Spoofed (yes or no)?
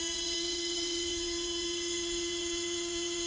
yes